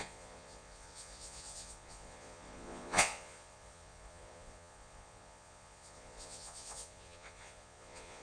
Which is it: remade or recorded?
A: remade